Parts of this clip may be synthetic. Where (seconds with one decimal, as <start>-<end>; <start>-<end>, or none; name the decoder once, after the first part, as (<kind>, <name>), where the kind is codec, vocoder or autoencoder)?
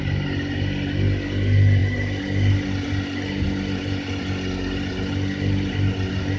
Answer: none